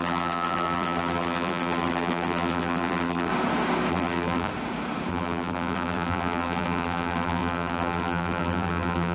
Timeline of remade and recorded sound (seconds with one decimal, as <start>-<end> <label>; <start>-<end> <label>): 0.0-3.3 remade; 3.3-3.9 recorded; 3.9-4.5 remade; 4.5-5.1 recorded; 5.1-9.1 remade